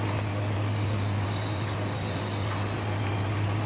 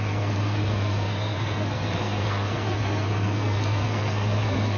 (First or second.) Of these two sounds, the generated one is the second